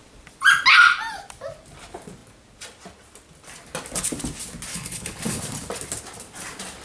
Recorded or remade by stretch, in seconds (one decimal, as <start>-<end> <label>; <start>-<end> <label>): 0.0-4.7 recorded; 4.7-5.4 remade; 5.4-6.8 recorded

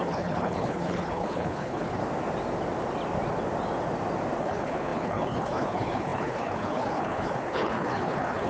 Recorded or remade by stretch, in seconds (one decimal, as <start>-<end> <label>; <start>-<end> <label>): 0.0-2.0 remade; 2.0-4.4 recorded; 4.4-8.5 remade

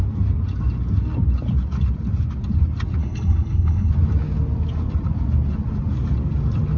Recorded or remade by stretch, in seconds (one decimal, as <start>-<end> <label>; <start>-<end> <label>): 0.0-3.0 recorded; 3.0-3.9 remade; 3.9-6.8 recorded

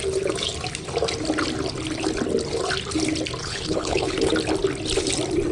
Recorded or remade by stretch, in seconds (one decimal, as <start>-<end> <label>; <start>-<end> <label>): 0.0-3.4 recorded; 3.4-4.3 remade; 4.3-5.5 recorded

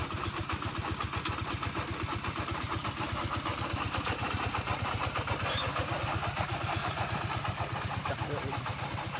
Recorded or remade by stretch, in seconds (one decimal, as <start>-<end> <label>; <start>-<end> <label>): 0.0-9.2 recorded

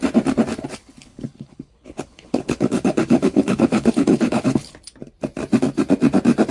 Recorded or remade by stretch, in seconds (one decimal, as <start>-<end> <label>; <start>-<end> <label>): 0.0-0.8 recorded; 0.8-4.7 remade; 4.7-6.5 recorded